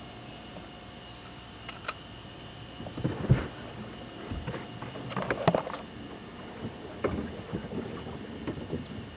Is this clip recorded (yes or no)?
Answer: yes